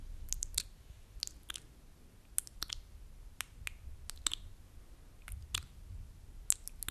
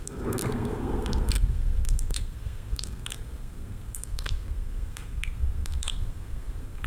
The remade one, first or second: second